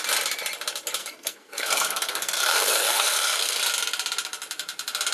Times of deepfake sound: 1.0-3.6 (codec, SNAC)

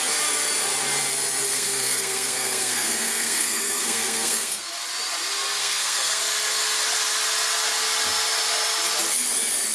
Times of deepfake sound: 1.5-4.7 (codec, SNAC); 5.6-6.2

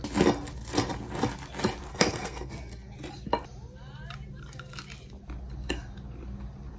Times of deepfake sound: 1.9-2.5 (codec, SNAC)

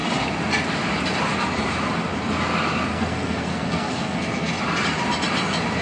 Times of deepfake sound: 2.9-4.5 (codec, SNAC)

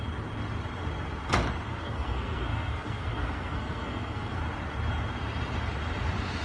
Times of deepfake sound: 1.7-4.4 (codec, SNAC)

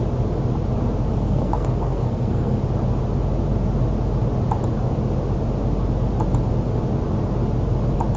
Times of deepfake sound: 1.1-2.6 (codec, SNAC)